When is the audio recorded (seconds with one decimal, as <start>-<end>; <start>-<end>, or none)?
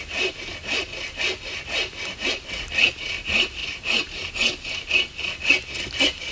0.0-3.6; 4.3-6.3